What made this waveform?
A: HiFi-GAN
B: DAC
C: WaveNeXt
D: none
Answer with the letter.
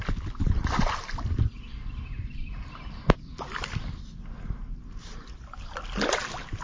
D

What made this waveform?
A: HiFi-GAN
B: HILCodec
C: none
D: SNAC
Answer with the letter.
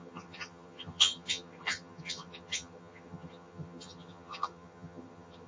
A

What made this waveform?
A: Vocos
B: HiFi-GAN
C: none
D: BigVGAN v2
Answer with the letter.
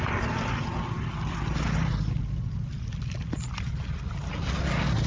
C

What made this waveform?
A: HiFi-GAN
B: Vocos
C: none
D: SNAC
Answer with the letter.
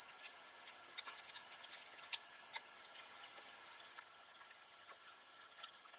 A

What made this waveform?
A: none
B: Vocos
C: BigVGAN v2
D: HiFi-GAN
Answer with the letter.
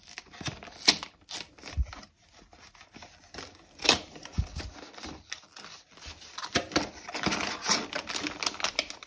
A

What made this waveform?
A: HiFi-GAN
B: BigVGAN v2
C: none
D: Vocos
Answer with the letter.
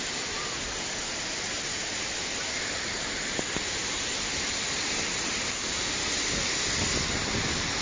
C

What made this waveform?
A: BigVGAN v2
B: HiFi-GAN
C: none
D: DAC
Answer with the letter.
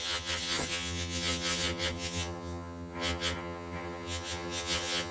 B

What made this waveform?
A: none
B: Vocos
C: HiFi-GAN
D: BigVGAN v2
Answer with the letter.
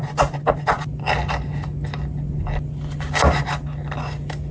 A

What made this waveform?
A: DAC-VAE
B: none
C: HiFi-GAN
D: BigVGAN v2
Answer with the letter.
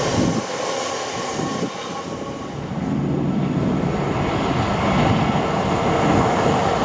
B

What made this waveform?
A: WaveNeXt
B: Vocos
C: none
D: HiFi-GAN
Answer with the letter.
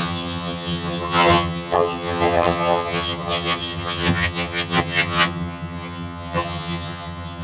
D